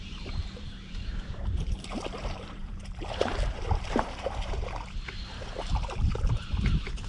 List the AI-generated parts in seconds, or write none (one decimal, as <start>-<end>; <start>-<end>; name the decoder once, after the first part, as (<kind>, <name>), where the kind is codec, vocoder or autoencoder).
0.0-7.1 (vocoder, BigVGAN v2)

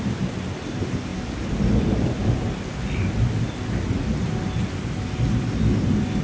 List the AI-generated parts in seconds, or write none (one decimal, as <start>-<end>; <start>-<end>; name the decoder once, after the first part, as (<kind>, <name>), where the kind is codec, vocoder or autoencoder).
none

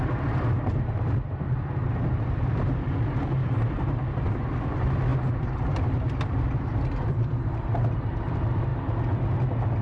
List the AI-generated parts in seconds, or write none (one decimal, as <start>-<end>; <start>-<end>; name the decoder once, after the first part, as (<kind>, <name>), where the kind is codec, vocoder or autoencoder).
0.0-8.7 (vocoder, BigVGAN v2)

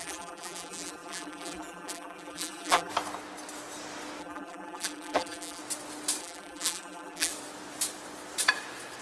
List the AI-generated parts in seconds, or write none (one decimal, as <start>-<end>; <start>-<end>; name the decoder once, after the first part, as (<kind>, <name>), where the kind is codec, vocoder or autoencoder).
0.0-2.9 (vocoder, BigVGAN v2); 4.2-5.6; 6.2-7.3